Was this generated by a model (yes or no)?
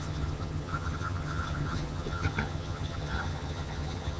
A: yes